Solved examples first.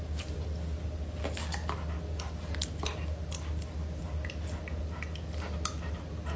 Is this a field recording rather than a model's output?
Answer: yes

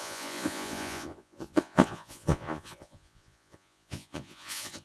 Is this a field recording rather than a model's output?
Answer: no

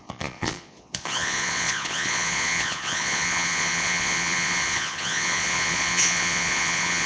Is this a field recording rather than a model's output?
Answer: no